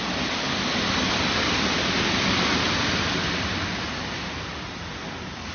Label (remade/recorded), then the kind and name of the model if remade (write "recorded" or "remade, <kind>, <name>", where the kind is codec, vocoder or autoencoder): recorded